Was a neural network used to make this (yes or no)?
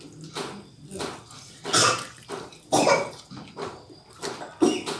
no